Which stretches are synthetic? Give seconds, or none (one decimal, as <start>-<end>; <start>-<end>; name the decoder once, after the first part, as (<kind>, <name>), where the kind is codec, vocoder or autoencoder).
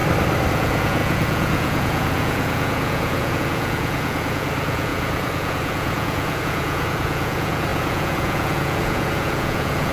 0.5-9.9 (vocoder, Vocos)